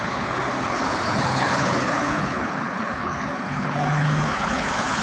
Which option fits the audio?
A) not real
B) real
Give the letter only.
A